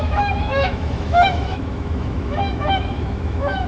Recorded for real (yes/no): no